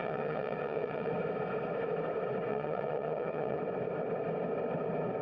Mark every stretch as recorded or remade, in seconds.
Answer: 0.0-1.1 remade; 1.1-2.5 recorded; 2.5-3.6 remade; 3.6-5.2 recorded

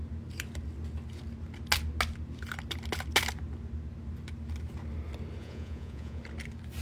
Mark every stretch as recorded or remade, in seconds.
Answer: 0.0-5.4 recorded; 5.4-6.2 remade; 6.2-6.8 recorded

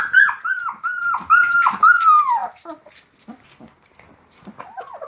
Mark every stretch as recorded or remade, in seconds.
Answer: 0.0-5.1 recorded

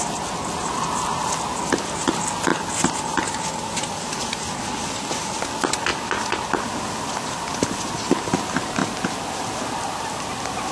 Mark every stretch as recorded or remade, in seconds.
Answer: 0.0-10.7 recorded